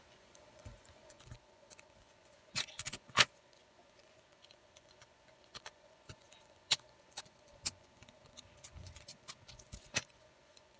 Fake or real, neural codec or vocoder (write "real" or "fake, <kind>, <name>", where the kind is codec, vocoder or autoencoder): fake, vocoder, Vocos